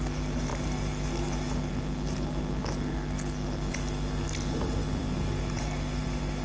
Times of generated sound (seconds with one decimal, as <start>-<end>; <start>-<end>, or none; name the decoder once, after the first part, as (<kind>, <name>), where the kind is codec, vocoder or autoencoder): 4.8-5.4 (vocoder, BigVGAN v2)